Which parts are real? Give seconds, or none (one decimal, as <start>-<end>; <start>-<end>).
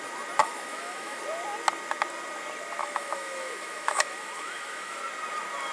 0.0-0.4; 1.2-2.8; 5.0-5.7